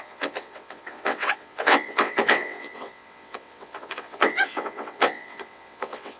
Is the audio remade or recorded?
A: remade